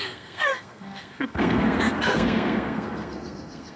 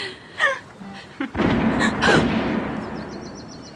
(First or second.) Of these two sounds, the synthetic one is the first